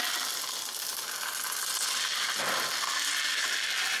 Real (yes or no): yes